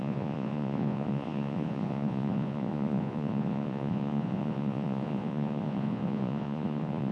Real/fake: fake